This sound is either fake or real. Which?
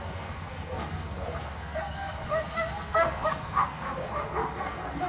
fake